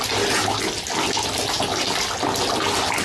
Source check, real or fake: real